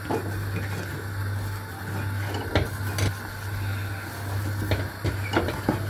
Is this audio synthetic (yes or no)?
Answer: no